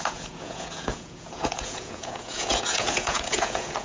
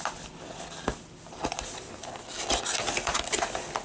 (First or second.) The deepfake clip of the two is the first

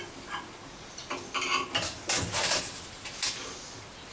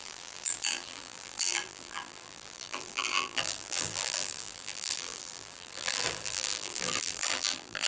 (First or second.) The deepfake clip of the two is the second